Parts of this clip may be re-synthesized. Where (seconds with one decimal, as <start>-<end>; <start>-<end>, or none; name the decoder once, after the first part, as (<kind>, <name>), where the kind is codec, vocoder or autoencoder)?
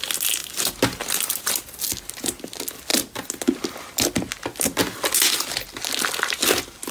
none